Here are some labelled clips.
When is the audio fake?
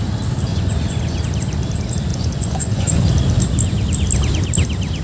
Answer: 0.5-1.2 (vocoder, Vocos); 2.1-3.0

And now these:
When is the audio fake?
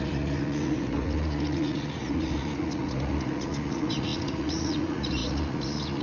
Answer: 0.0-6.0 (vocoder, Vocos)